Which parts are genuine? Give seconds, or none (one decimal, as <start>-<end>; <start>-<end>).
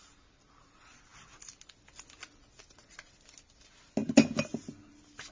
0.0-5.3